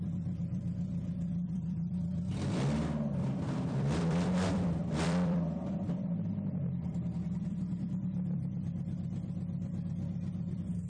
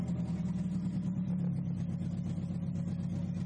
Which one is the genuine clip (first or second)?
second